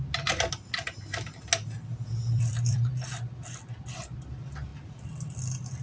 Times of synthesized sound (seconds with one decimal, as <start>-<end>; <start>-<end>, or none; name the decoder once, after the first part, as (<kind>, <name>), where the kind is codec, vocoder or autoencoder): 1.9-3.3 (vocoder, BigVGAN v2)